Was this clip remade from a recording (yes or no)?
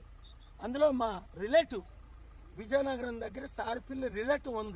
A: yes